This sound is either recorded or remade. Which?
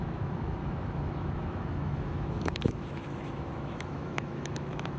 remade